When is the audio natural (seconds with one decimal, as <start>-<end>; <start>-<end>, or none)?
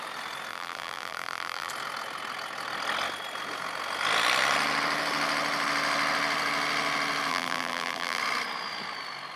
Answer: 0.0-0.5; 1.7-7.3; 8.2-9.4